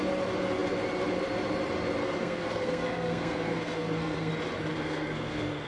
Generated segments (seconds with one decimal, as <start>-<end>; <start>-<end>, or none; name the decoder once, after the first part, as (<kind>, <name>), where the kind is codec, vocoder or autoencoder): 2.0-4.3 (codec, SNAC); 4.7-5.7